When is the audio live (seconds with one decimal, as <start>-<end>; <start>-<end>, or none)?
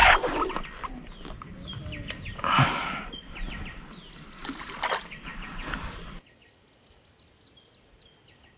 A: 0.0-8.6